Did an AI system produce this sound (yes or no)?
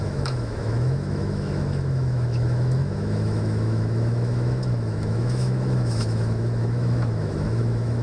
yes